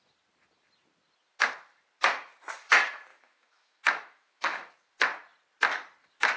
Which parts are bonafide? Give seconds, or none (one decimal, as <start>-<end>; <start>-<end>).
0.0-3.1; 4.7-6.4